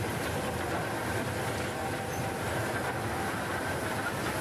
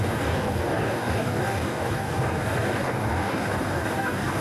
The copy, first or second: second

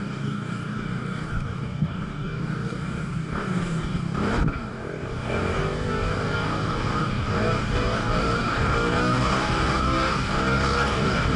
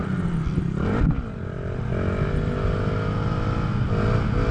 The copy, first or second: first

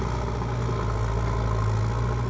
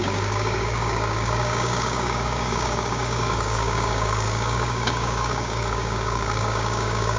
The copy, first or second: second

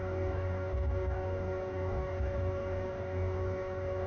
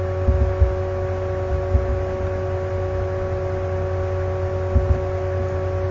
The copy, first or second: first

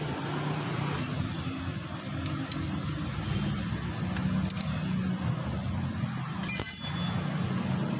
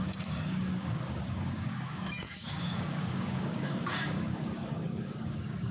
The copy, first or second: second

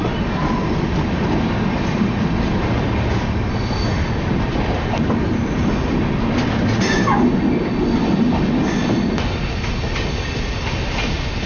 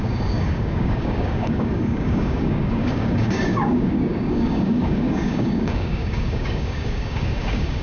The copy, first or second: second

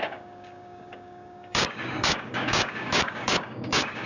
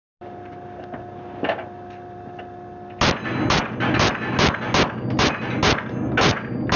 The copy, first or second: first